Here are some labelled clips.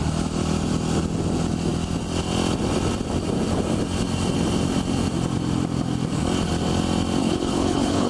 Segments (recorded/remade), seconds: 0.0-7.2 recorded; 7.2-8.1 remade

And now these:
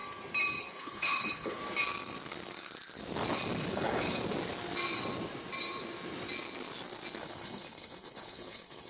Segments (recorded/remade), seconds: 0.0-0.6 recorded; 0.6-1.6 remade; 1.6-3.7 recorded; 3.7-4.2 remade; 4.2-7.2 recorded; 7.2-8.9 remade

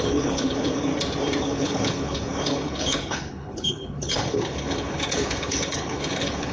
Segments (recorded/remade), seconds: 0.0-0.9 remade; 0.9-1.4 recorded; 1.4-6.5 remade

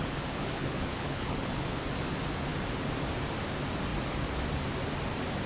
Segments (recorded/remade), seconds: 0.0-1.8 remade; 1.8-5.5 recorded

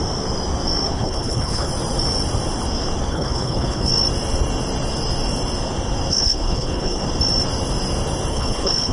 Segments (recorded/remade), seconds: 0.0-0.9 recorded; 0.9-1.7 remade; 1.7-3.1 recorded; 3.1-3.9 remade; 3.9-6.1 recorded; 6.1-7.0 remade; 7.0-8.3 recorded; 8.3-8.9 remade